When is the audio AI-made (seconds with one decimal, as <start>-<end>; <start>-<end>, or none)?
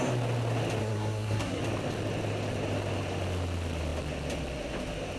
0.8-1.6